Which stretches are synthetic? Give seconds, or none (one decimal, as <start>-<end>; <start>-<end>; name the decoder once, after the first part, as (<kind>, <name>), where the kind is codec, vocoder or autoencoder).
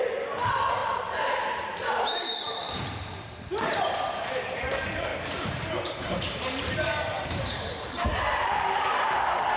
0.0-9.6 (vocoder, BigVGAN v2)